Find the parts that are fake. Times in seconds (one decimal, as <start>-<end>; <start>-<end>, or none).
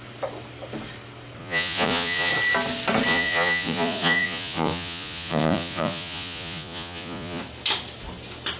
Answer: 1.4-2.3; 3.1-7.4